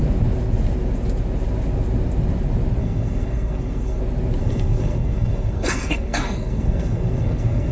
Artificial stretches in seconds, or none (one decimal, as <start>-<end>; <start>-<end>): 2.8-4.0; 4.4-7.7